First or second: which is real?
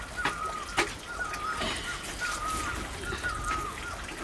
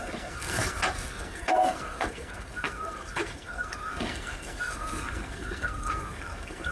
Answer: first